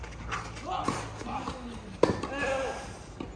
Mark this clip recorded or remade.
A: recorded